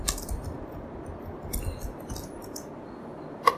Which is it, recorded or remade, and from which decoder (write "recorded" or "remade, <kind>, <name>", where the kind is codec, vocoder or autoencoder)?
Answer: recorded